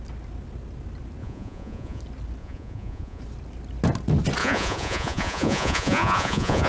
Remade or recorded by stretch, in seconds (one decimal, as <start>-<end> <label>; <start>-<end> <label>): 0.0-1.2 recorded; 1.2-2.0 remade; 2.0-2.4 recorded; 2.4-3.2 remade; 3.2-4.4 recorded; 4.4-6.7 remade